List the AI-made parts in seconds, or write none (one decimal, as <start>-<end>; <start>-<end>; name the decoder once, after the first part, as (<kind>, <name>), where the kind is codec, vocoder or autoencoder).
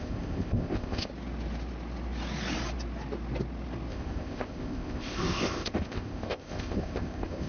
0.0-1.1 (codec, ZipCodec); 3.9-7.5